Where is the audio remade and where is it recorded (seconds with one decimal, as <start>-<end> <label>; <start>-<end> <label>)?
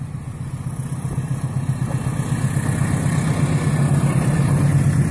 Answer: 0.0-5.1 recorded